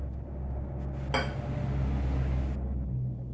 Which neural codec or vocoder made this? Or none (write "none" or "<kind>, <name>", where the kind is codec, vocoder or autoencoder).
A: none